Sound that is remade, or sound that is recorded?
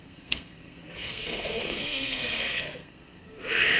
remade